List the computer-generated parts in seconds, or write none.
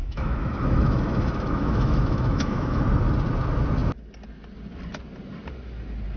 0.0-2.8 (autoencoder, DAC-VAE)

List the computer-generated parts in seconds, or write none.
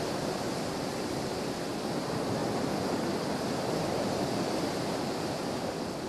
0.9-1.7 (vocoder, BigVGAN v2); 2.4-6.1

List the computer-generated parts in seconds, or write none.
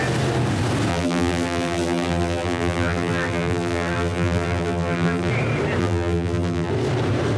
0.9-5.3 (vocoder, BigVGAN v2); 5.8-6.7